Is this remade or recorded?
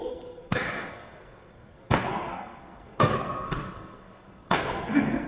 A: remade